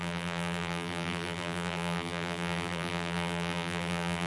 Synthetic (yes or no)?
yes